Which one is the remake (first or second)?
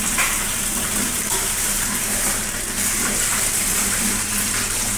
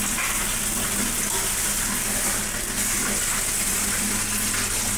first